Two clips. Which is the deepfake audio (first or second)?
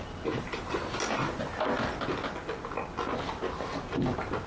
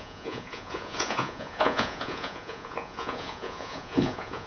second